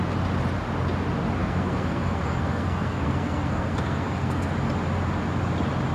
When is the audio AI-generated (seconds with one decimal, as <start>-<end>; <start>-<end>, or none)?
1.4-4.5